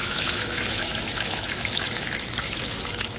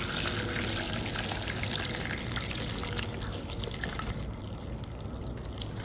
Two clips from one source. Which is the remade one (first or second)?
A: first